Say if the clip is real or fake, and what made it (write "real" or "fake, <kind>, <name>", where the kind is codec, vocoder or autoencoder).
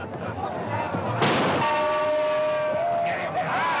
real